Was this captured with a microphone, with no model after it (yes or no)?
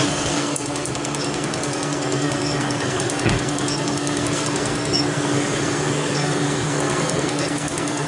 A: no